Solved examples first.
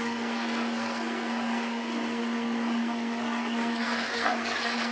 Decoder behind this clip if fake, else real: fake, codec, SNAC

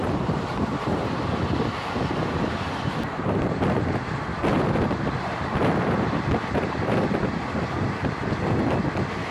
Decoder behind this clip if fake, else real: real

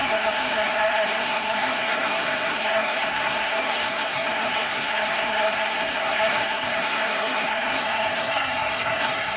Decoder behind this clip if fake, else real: fake, codec, SNAC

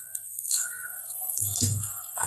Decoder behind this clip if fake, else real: fake, codec, SNAC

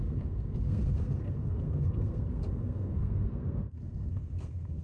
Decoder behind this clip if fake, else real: fake, codec, SNAC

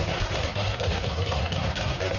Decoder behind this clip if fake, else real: fake, codec, SNAC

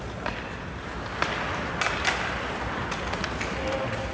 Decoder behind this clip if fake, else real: real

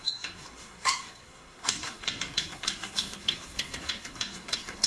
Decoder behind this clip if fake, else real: fake, codec, SNAC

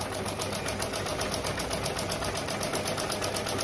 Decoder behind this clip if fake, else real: real